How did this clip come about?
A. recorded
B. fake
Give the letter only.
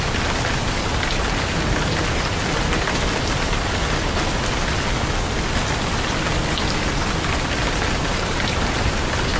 A